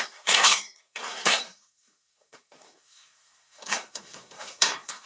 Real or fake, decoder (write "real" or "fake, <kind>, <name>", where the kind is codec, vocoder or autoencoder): fake, codec, SNAC